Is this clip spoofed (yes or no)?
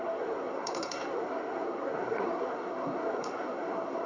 yes